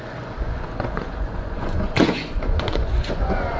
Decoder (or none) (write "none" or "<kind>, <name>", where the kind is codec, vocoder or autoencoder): vocoder, Vocos